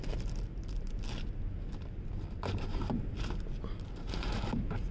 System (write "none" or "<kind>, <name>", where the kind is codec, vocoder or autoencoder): none